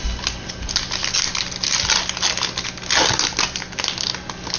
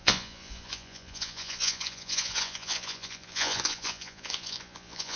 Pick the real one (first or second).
first